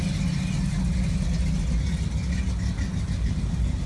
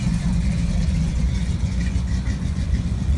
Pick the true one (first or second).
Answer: first